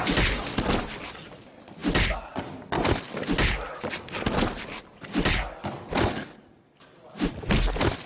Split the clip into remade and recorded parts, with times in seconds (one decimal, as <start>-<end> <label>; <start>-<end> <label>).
0.0-8.1 recorded

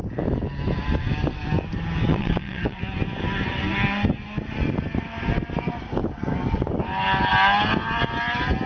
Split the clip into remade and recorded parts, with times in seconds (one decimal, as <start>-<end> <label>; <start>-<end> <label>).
0.0-2.1 recorded; 2.1-2.8 remade; 2.8-8.7 recorded